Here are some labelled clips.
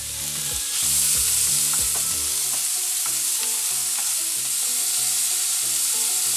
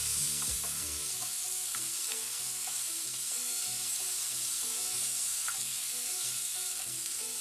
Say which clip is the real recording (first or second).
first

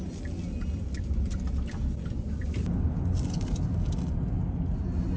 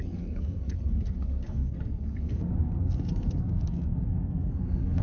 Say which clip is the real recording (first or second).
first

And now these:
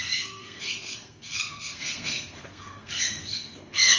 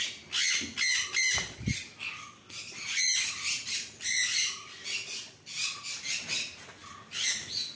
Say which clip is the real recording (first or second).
second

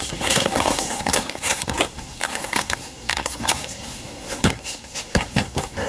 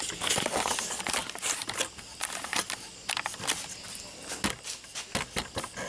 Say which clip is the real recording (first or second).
second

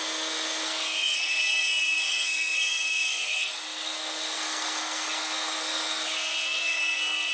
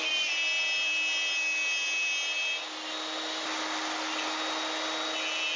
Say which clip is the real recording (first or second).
second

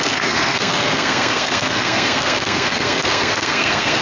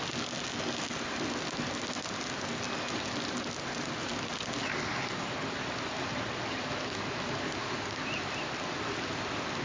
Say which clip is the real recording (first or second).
second